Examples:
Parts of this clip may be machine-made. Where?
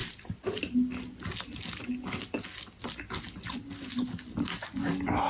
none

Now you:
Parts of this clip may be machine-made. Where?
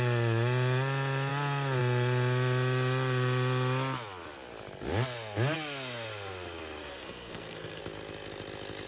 6.8-7.8 (codec, SNAC)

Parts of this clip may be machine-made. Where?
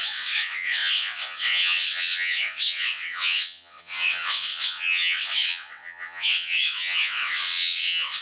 0.0-8.2 (vocoder, WaveNeXt)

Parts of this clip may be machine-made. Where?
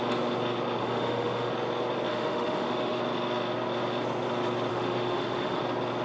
0.8-1.5 (autoencoder, DAC-VAE); 2.1-3.0; 4.7-5.6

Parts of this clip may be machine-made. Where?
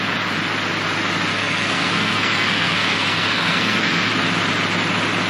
1.3-4.1 (codec, SNAC)